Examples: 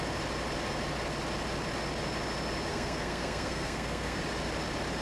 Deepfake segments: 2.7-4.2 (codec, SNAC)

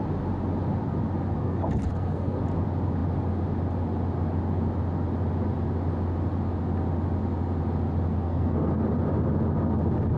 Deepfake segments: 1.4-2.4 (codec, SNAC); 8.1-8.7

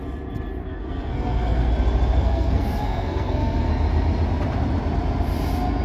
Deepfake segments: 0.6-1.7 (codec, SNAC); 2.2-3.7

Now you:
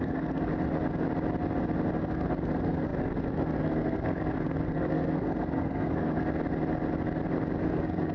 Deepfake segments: 0.0-0.5 (codec, SNAC); 2.0-6.2; 7.6-8.1